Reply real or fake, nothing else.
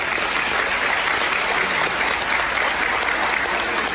real